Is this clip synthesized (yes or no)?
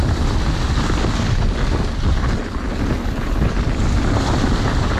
no